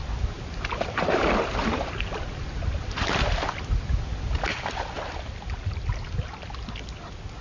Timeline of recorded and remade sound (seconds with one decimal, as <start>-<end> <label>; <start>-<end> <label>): 0.0-7.4 recorded